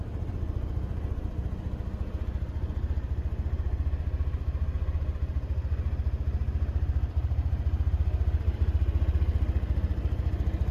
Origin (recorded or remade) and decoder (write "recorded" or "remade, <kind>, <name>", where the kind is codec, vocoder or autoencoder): recorded